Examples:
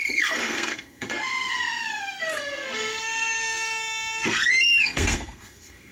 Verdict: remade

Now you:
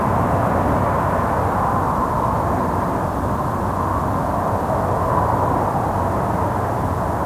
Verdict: recorded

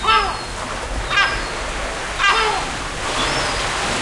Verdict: recorded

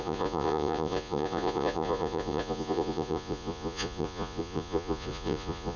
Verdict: remade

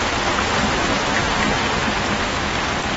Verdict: recorded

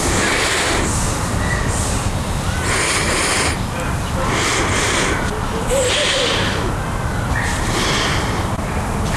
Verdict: recorded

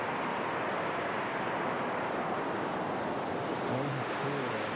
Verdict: recorded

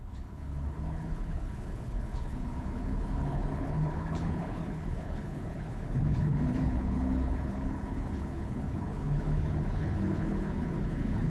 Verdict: remade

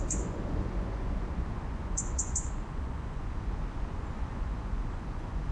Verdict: remade